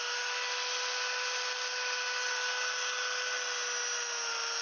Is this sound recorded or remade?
recorded